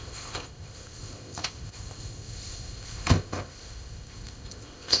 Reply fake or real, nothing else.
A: fake